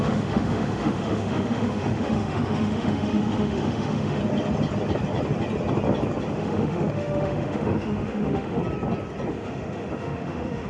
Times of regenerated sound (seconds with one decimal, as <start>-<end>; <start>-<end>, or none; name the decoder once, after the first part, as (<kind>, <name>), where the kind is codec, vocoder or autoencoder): 0.0-4.2 (autoencoder, DAC-VAE); 6.3-8.6; 9.3-10.7